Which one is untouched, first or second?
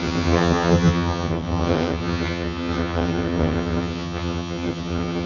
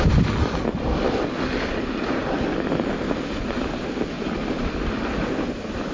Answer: second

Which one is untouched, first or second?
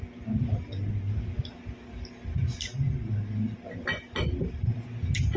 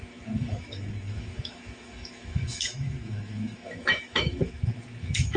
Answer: first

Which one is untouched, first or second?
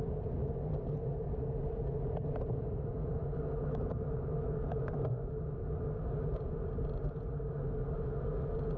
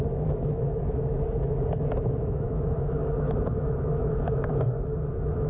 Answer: first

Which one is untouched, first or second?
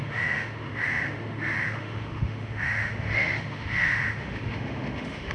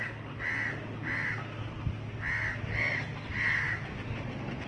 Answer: second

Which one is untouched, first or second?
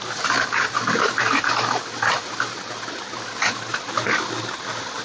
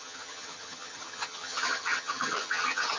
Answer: first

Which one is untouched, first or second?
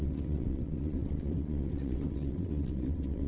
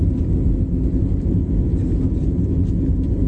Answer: second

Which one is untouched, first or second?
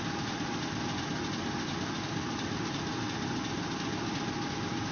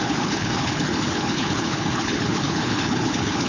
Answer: first